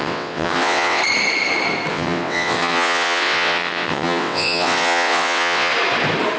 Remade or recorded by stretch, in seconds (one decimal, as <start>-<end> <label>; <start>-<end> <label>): 0.0-1.0 remade; 1.0-1.9 recorded; 1.9-5.7 remade; 5.7-6.4 recorded